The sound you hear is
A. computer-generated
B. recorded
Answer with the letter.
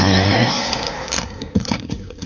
A